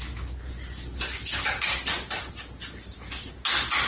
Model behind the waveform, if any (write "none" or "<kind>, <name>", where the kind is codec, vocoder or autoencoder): none